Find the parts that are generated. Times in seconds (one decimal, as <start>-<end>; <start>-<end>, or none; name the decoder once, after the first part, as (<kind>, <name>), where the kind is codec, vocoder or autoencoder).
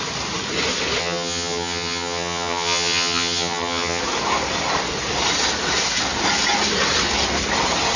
1.0-4.0 (vocoder, HiFi-GAN)